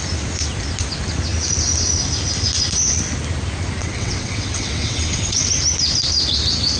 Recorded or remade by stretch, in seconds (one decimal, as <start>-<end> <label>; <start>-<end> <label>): 0.0-3.8 recorded; 3.8-5.5 remade; 5.5-6.8 recorded